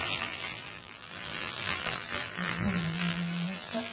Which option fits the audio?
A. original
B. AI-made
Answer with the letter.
B